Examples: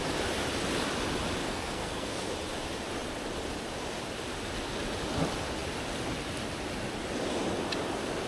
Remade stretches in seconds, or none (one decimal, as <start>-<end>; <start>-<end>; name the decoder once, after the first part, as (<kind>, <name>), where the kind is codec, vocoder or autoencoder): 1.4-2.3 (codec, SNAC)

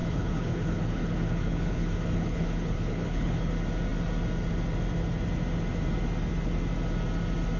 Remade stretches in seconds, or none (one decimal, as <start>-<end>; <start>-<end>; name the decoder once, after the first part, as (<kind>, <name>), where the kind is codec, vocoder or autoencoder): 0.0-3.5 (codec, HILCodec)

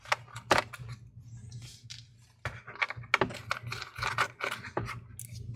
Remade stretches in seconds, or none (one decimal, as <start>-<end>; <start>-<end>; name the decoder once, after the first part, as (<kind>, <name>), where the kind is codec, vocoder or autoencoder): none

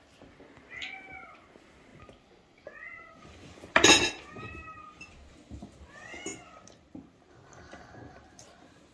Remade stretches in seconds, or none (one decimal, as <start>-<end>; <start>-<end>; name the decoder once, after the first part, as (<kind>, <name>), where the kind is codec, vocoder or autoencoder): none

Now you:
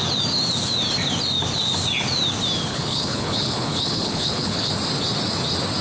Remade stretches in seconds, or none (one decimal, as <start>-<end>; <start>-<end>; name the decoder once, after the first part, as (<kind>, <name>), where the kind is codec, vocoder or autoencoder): 2.7-4.7 (codec, HILCodec)